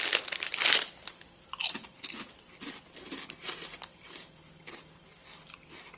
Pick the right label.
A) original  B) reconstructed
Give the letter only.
A